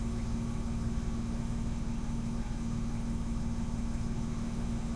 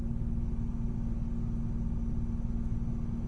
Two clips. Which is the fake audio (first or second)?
first